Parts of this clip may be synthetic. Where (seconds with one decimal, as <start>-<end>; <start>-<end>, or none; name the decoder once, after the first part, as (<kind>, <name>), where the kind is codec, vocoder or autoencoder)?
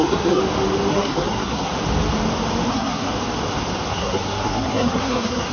0.0-0.4 (codec, SNAC); 0.9-1.7; 2.7-3.1; 3.9-5.5